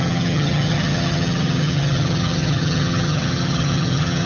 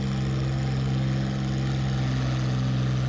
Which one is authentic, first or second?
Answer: second